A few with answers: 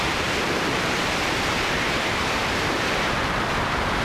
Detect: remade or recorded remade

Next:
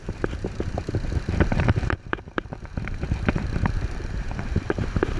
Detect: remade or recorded remade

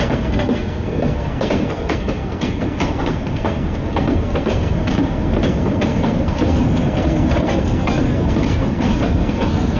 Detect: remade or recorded remade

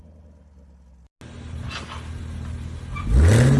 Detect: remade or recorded recorded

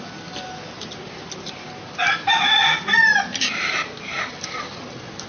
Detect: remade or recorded recorded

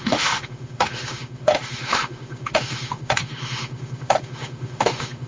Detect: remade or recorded remade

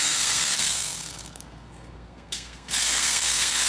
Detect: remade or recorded remade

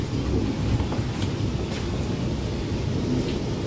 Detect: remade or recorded recorded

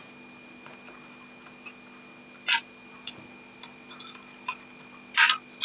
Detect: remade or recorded recorded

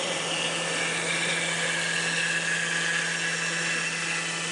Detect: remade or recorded recorded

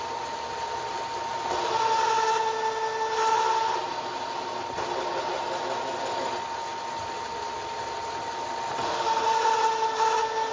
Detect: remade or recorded recorded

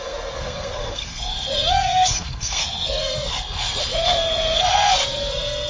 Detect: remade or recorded remade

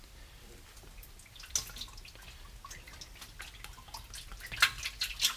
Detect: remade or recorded recorded